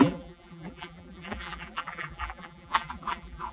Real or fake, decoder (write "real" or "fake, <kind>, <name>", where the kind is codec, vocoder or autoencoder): fake, vocoder, BigVGAN v2